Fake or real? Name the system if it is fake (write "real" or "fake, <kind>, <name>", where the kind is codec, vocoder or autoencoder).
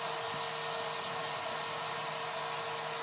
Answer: real